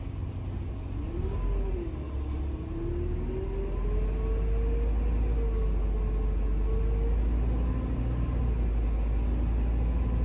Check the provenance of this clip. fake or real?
real